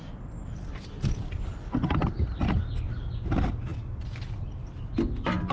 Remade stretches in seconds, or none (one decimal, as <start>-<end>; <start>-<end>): 0.0-1.8